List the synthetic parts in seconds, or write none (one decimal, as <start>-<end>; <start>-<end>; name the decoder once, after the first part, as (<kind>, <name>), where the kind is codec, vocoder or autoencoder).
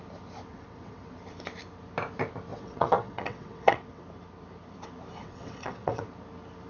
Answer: 0.5-1.1 (vocoder, WaveNeXt); 2.5-4.0; 5.2-6.0